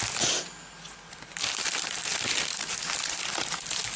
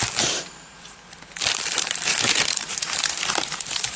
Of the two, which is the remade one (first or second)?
second